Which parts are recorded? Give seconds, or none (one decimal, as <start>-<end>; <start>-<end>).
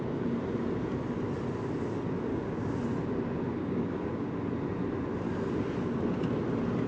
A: 0.0-2.3; 2.8-3.6; 4.3-6.9